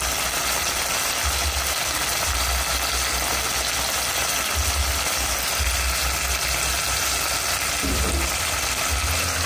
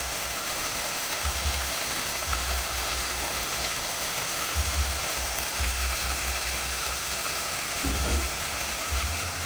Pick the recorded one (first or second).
first